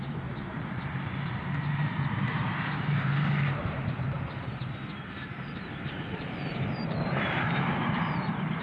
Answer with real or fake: fake